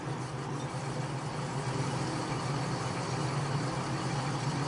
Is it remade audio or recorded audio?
recorded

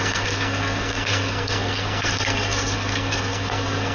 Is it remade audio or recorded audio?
remade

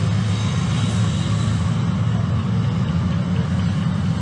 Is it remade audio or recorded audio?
recorded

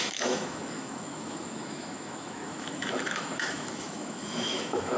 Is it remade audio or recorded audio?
remade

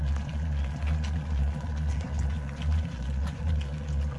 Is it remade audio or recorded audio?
remade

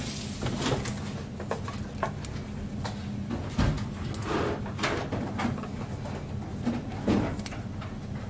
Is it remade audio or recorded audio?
recorded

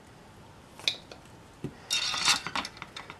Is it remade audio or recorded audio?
recorded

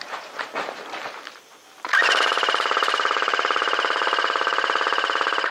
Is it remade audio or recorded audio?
remade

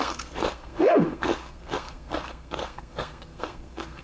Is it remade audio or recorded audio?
remade